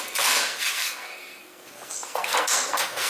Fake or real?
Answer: fake